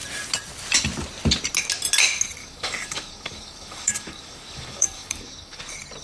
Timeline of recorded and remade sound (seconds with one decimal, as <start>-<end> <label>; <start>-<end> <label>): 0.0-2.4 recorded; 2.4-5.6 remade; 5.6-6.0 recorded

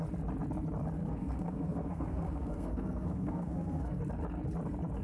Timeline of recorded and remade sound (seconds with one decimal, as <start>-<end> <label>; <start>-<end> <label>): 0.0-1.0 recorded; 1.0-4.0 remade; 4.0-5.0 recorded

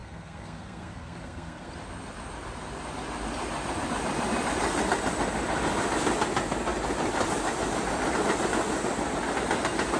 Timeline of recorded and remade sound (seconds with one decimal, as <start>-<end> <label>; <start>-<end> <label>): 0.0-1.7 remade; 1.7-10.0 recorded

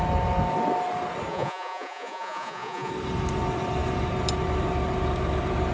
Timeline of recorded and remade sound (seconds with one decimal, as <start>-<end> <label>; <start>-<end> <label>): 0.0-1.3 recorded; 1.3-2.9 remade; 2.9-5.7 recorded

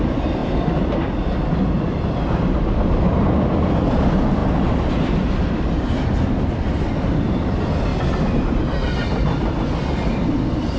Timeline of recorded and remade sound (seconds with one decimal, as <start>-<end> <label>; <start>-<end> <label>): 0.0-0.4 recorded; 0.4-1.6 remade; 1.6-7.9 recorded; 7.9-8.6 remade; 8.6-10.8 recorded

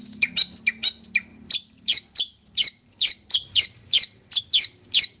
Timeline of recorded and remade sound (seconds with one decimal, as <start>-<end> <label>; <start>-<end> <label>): 0.0-1.3 recorded; 1.3-4.4 remade; 4.4-5.2 recorded